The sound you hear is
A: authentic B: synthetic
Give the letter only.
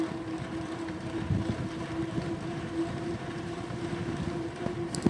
B